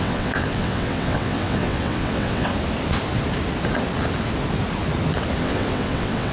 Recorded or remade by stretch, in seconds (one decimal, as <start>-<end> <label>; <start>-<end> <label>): 0.0-2.5 remade; 2.5-5.4 recorded; 5.4-6.3 remade